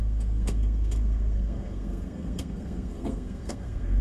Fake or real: fake